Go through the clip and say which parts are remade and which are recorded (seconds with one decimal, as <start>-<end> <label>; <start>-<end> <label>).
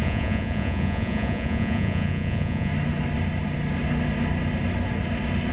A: 0.0-2.7 remade; 2.7-5.5 recorded